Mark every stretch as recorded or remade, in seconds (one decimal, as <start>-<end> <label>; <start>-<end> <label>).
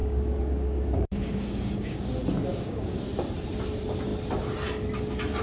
0.0-2.0 remade; 2.0-2.5 recorded; 2.5-3.0 remade; 3.0-5.4 recorded